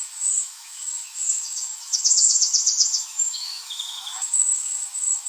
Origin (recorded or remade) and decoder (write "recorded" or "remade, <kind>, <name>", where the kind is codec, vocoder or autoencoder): remade, autoencoder, DAC-VAE